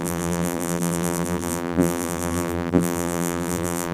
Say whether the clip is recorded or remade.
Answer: remade